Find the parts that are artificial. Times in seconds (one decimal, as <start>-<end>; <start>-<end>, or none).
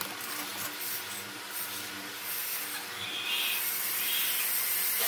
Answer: none